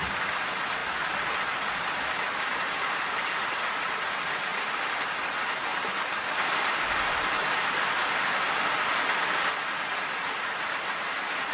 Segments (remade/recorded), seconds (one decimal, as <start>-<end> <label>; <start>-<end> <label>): 0.0-11.5 recorded